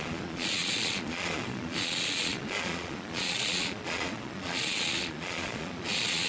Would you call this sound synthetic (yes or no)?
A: yes